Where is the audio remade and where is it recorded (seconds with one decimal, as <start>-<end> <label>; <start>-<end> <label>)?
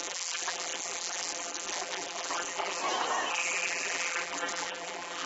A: 0.0-2.8 remade; 2.8-3.3 recorded; 3.3-5.3 remade